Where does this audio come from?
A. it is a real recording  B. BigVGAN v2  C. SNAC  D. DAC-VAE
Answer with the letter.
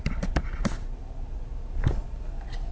A